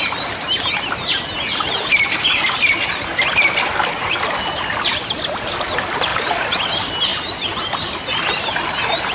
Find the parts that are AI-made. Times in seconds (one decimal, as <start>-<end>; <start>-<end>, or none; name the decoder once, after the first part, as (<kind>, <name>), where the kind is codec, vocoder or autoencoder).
6.1-6.6 (vocoder, BigVGAN v2); 7.1-7.8